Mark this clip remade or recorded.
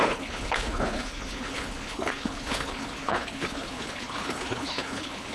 remade